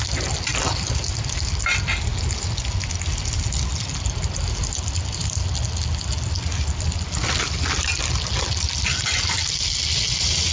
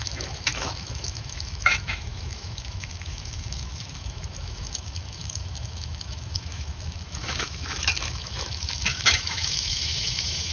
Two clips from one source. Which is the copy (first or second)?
second